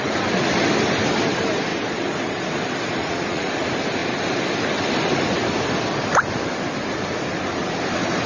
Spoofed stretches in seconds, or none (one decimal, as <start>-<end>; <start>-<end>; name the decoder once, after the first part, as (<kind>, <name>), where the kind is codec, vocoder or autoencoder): 3.0-3.5 (vocoder, Vocos)